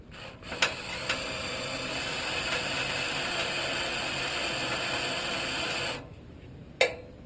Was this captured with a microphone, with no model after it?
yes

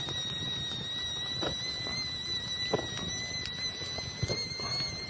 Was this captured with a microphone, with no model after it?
yes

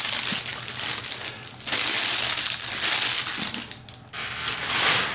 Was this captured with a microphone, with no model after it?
yes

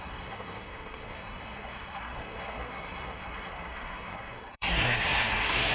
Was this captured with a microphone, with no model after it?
no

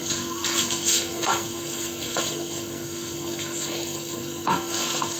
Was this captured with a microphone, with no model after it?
no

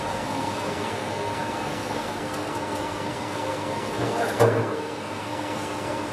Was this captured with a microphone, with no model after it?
no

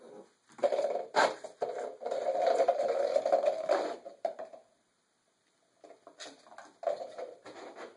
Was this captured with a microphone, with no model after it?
yes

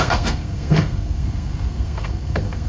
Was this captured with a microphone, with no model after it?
no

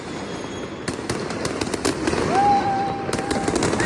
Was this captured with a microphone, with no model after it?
yes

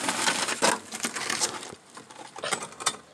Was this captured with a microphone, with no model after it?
yes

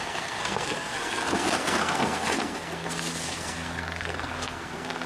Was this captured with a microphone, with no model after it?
no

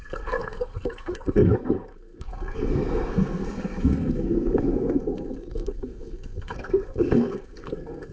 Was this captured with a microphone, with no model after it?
no